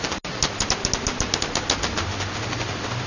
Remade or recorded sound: recorded